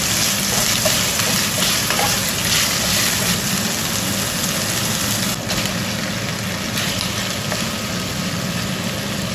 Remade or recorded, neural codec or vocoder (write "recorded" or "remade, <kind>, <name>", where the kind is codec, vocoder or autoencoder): recorded